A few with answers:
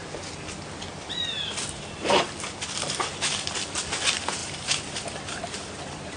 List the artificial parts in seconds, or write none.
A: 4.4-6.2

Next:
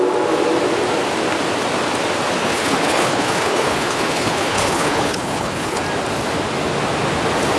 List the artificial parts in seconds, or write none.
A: 2.4-5.8

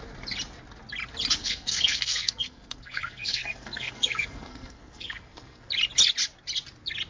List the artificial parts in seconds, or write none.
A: 1.4-5.7

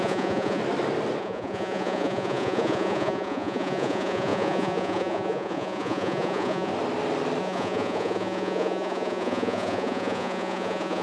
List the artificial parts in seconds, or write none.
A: 0.0-0.6; 1.2-6.7; 7.4-11.0

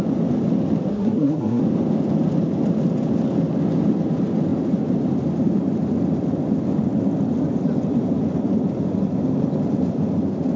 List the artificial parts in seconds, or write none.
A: 0.9-1.6

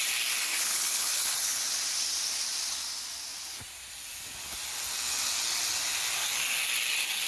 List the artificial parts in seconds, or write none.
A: 0.5-1.6